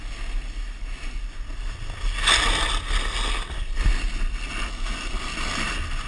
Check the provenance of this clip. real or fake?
real